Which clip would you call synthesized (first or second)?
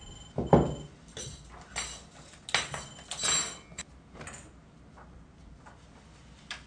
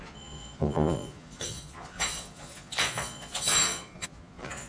second